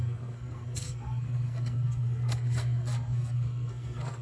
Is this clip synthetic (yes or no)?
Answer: yes